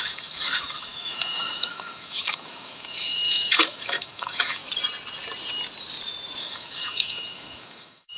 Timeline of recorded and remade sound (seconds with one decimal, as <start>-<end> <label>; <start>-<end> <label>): 0.0-4.6 remade; 4.6-6.4 recorded; 6.4-8.2 remade

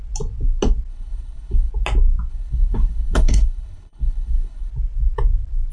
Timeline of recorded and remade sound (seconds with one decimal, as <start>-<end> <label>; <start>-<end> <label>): 0.0-0.9 recorded; 0.9-1.7 remade; 1.7-2.3 recorded; 2.3-4.7 remade; 4.7-5.7 recorded

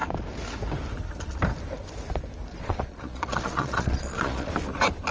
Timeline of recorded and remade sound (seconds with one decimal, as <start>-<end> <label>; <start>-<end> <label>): 0.0-2.5 recorded; 2.5-4.5 remade; 4.5-5.1 recorded

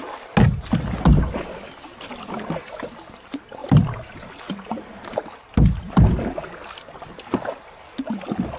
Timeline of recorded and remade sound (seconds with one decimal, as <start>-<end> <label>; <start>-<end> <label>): 0.0-8.6 recorded

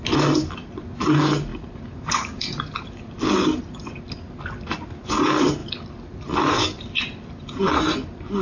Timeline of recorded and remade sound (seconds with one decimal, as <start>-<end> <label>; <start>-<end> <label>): 0.0-1.5 recorded; 1.5-3.1 remade; 3.1-8.4 recorded

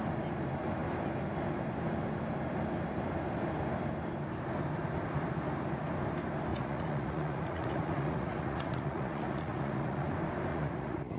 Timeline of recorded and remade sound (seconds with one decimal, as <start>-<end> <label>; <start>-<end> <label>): 0.0-6.5 recorded; 6.5-10.1 remade; 10.1-10.5 recorded; 10.5-11.2 remade

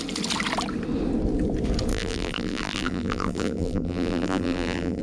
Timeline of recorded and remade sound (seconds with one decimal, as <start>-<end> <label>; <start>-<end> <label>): 0.0-1.9 recorded; 1.9-5.0 remade